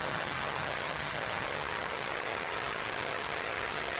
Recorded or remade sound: remade